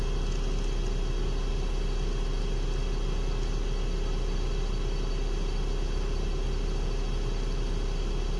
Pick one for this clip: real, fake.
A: real